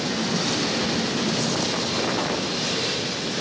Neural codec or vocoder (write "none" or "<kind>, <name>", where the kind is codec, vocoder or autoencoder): none